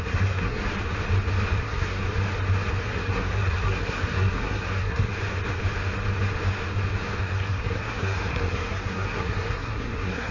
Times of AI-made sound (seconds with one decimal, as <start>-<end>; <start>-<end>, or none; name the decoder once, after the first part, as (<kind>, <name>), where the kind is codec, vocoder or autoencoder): 0.0-0.6 (codec, SNAC); 1.6-2.0; 2.8-5.1; 7.2-10.3